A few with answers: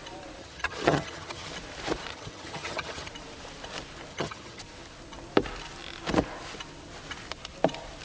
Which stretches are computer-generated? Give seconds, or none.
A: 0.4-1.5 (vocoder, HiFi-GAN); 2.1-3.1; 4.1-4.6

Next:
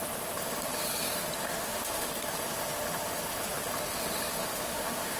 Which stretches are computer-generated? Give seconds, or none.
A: 1.4-2.1 (autoencoder, DAC-VAE); 4.4-5.2

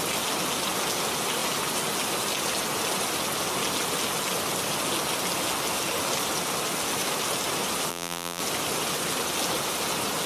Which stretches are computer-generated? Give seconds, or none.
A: 7.9-8.4 (vocoder, BigVGAN v2)

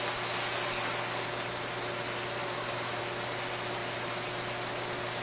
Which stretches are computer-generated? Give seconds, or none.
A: 2.4-3.0 (codec, DAC)